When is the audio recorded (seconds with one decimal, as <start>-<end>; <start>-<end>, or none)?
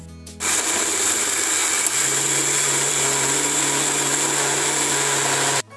0.0-5.8